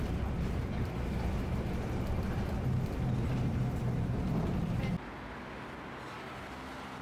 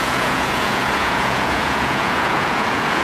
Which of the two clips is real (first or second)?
first